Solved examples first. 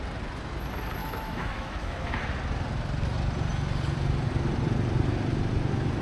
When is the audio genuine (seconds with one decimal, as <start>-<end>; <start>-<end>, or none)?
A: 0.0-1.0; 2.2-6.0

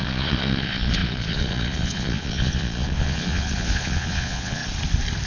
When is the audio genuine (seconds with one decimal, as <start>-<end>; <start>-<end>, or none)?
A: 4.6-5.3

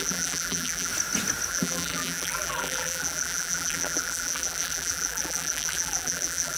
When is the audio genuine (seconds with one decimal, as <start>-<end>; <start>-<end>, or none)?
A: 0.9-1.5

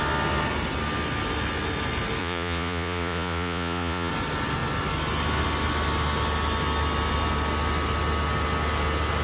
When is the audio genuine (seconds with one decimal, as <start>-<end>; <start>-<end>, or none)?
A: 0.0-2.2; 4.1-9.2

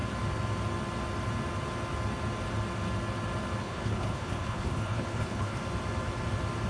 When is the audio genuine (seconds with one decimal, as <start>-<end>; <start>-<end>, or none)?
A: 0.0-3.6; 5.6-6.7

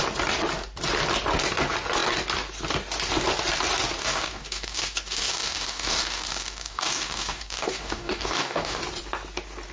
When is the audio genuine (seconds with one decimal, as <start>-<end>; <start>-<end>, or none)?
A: 0.0-4.0; 8.8-9.7